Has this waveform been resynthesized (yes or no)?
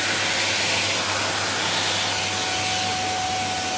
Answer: no